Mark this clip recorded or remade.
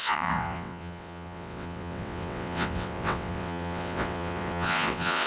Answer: remade